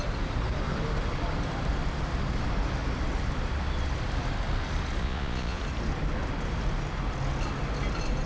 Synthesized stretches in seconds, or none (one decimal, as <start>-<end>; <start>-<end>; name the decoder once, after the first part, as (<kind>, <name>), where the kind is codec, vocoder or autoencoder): 5.0-5.6 (vocoder, Vocos)